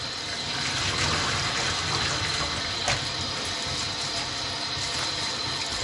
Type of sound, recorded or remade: remade